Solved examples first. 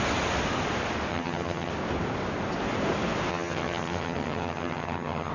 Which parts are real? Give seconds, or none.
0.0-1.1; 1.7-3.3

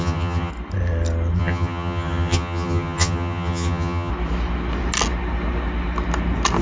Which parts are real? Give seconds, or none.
0.5-1.4; 4.1-6.6

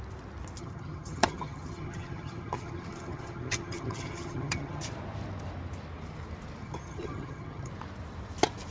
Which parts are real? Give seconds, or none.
0.0-0.6; 4.8-6.6; 7.7-8.7